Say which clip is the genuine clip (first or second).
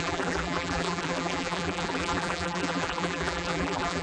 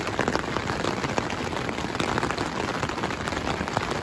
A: second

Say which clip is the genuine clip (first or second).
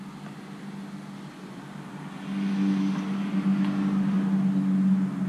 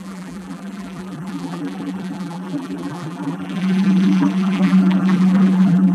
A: first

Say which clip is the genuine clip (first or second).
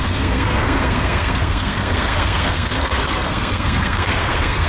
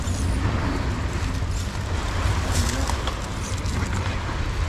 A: second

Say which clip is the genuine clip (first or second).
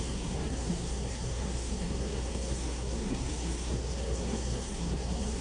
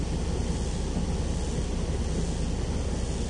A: second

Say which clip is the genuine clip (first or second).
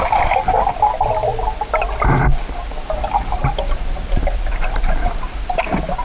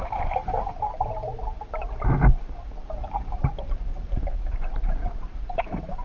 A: first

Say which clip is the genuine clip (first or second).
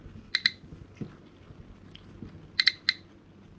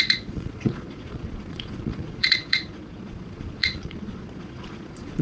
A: first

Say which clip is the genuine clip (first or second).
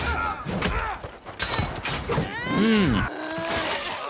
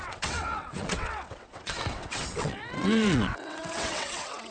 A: first